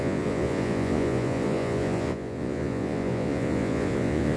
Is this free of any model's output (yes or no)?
no